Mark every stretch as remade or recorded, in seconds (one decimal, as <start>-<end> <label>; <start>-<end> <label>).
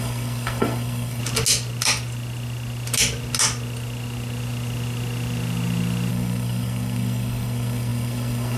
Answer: 0.0-1.2 remade; 1.2-6.1 recorded; 6.1-8.6 remade